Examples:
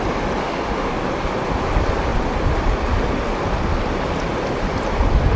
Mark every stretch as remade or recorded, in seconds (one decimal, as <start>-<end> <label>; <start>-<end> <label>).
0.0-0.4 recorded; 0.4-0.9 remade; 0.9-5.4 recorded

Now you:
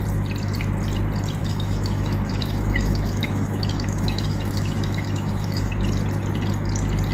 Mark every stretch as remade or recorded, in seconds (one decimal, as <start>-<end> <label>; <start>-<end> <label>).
0.0-1.4 recorded; 1.4-5.7 remade; 5.7-7.1 recorded

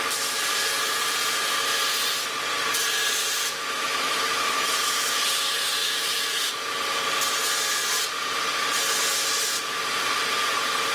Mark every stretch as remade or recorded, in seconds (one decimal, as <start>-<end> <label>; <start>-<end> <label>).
0.0-3.4 recorded; 3.4-5.1 remade; 5.1-5.8 recorded; 5.8-6.5 remade; 6.5-10.9 recorded

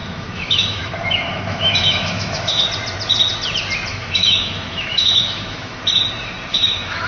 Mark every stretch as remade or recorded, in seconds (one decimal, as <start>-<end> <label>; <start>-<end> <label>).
0.0-2.6 remade; 2.6-3.9 recorded; 3.9-5.8 remade; 5.8-6.5 recorded; 6.5-7.1 remade

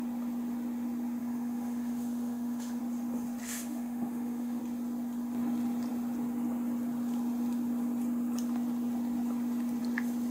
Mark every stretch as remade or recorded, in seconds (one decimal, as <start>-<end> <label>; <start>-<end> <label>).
0.0-1.2 recorded; 1.2-2.8 remade; 2.8-3.4 recorded; 3.4-4.6 remade; 4.6-10.3 recorded

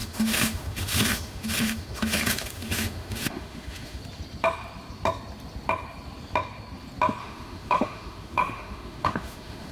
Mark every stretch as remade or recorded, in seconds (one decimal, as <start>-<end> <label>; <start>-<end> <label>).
0.0-4.0 remade; 4.0-7.2 recorded; 7.2-9.7 remade

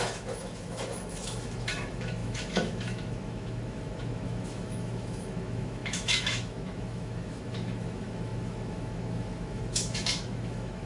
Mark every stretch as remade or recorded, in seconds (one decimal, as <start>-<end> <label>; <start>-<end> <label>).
0.0-10.9 remade